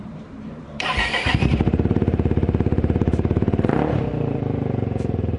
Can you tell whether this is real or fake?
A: fake